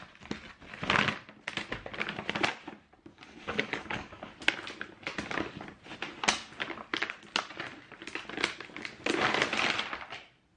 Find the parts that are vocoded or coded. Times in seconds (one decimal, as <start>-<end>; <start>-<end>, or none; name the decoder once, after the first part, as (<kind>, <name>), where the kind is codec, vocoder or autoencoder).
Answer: 3.1-4.3 (codec, DAC)